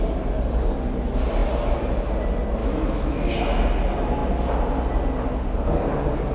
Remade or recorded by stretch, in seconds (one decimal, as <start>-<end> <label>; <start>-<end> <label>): 0.0-2.6 recorded; 2.6-3.3 remade; 3.3-6.3 recorded